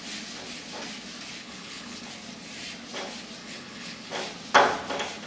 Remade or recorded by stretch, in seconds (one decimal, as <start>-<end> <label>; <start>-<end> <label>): 0.0-1.4 recorded; 1.4-2.1 remade; 2.1-3.4 recorded; 3.4-4.1 remade; 4.1-5.3 recorded